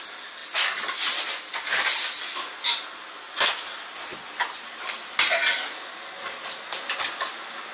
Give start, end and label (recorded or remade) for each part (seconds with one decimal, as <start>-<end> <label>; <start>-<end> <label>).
0.0-7.7 recorded